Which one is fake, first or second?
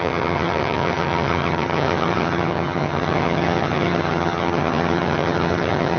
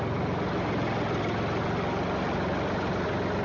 first